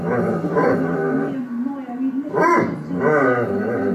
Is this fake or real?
real